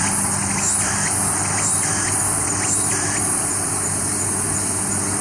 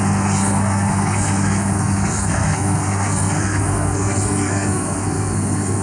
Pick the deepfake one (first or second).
second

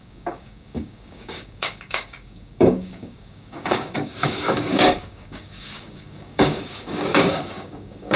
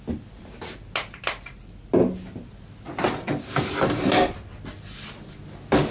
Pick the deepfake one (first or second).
first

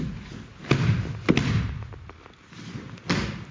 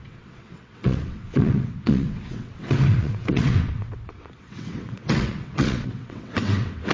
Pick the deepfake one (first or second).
second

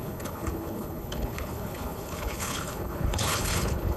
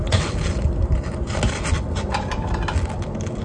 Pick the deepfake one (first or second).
first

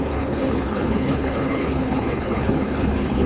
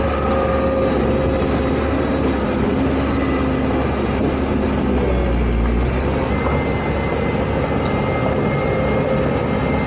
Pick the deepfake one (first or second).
first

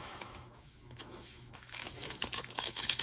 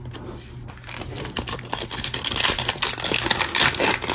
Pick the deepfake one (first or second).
first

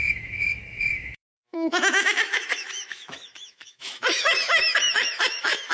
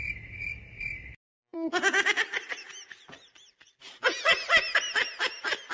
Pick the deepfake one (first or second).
first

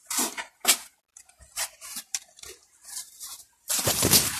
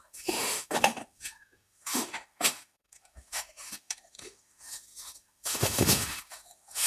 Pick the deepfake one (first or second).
second